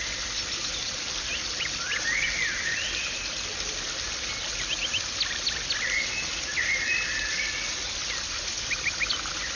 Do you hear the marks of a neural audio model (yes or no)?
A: no